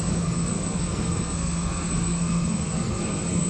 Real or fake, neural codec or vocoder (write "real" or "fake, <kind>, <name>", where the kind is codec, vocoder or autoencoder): fake, codec, SNAC